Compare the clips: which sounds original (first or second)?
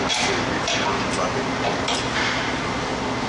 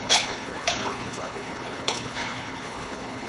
first